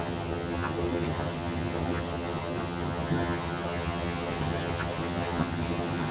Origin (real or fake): fake